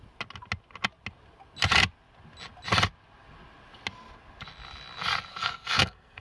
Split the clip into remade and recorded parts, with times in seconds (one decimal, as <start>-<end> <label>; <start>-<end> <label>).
0.0-5.3 recorded; 5.3-6.2 remade